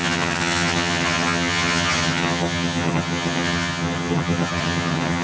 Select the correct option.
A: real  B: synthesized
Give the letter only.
B